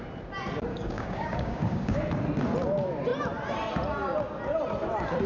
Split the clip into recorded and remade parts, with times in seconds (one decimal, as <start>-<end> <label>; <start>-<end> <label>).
0.0-0.7 recorded; 0.7-2.0 remade; 2.0-5.3 recorded